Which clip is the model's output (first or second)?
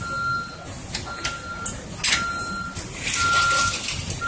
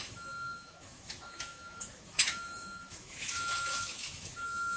second